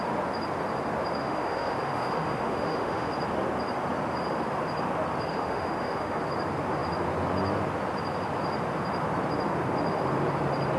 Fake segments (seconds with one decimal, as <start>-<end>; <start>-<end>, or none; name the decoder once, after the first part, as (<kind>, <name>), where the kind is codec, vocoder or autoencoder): 1.2-3.1 (autoencoder, DAC-VAE); 5.3-6.2